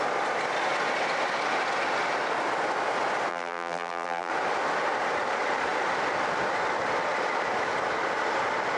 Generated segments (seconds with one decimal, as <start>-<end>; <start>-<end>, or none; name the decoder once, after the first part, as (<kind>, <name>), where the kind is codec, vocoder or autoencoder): 3.3-4.3 (vocoder, BigVGAN v2)

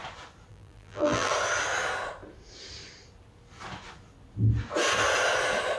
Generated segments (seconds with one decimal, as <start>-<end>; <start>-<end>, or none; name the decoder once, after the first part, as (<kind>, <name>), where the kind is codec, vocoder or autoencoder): 0.5-1.3 (vocoder, BigVGAN v2)